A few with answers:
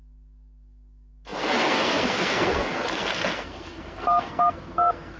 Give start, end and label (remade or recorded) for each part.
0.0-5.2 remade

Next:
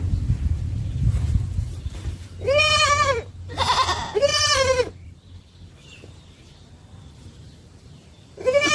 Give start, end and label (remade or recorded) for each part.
0.0-8.7 remade

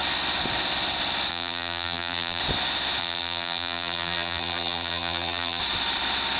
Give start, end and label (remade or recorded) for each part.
0.0-1.3 recorded; 1.3-2.4 remade; 2.4-3.0 recorded; 3.0-5.6 remade; 5.6-6.4 recorded

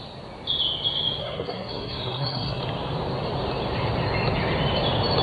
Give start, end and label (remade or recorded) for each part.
0.0-1.2 recorded; 1.2-2.6 remade; 2.6-5.2 recorded